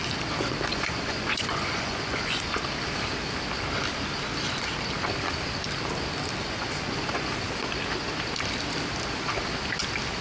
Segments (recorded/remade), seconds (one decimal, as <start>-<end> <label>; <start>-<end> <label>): 0.0-0.7 recorded; 0.7-2.6 remade; 2.6-6.4 recorded; 6.4-7.3 remade; 7.3-10.2 recorded